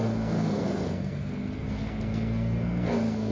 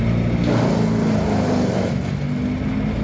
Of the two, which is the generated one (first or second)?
first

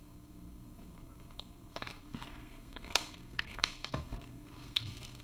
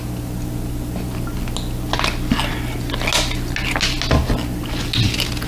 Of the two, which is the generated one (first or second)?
first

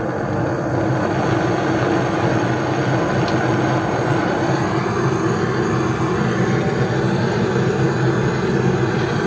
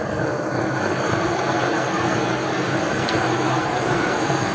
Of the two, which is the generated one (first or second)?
second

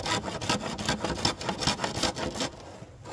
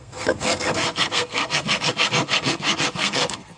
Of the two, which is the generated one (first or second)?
second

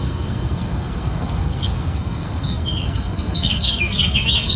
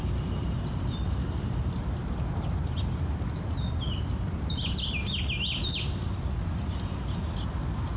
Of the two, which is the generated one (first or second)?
first